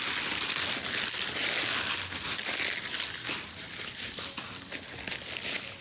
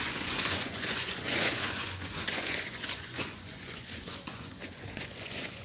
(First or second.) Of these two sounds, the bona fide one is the first